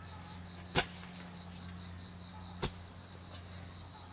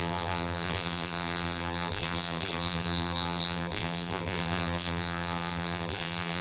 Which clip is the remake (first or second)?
second